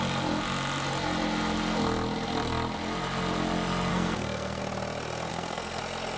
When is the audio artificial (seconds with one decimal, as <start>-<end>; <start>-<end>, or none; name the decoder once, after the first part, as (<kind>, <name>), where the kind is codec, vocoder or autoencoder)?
3.9-4.6 (codec, SNAC); 5.3-5.8